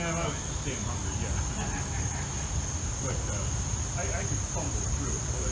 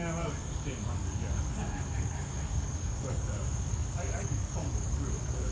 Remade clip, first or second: second